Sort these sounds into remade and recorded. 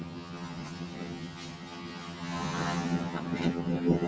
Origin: remade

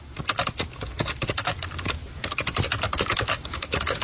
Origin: recorded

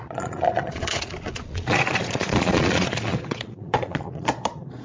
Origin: remade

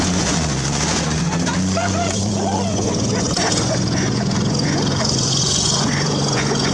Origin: remade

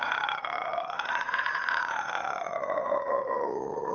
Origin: remade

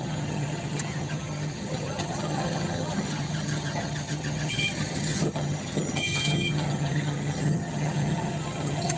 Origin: remade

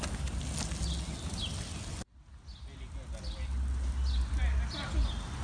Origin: recorded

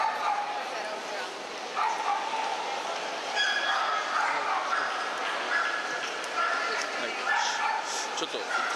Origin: recorded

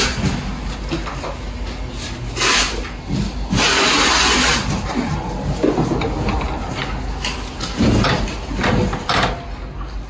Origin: recorded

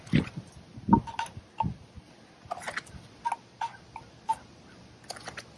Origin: recorded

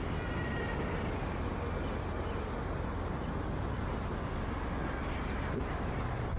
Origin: recorded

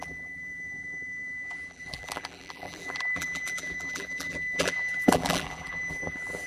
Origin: remade